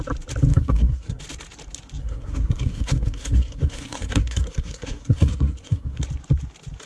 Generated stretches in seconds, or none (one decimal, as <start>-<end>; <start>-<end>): 0.5-1.2; 2.0-6.0